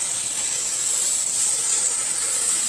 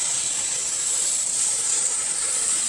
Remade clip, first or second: second